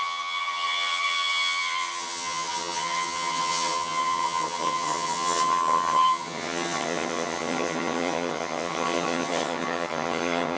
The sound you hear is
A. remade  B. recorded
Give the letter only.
A